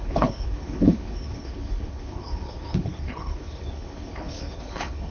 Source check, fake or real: fake